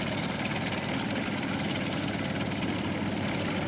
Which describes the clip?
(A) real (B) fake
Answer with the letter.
A